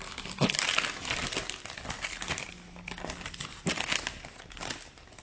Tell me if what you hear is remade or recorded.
recorded